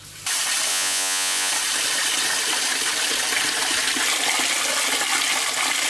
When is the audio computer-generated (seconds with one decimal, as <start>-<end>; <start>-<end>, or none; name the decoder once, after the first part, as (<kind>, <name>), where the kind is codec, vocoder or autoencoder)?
0.7-1.5 (vocoder, Vocos)